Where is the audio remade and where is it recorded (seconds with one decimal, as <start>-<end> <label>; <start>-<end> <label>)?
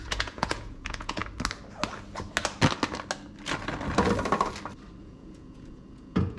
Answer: 0.0-1.2 remade; 1.2-5.0 recorded; 5.0-6.4 remade